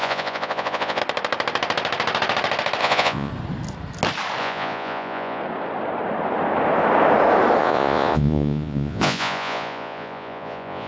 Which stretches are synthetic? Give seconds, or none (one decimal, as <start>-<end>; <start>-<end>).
0.0-1.0; 2.8-3.3; 4.4-5.4; 7.6-10.9